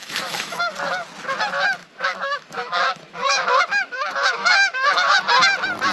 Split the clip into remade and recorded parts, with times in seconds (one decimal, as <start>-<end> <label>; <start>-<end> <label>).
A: 0.0-0.6 remade; 0.6-1.8 recorded; 1.8-5.2 remade; 5.2-5.9 recorded